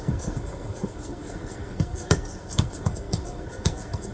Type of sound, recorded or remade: remade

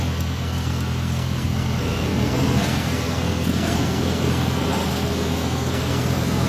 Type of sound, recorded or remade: remade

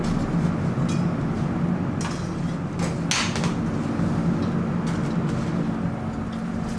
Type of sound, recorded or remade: recorded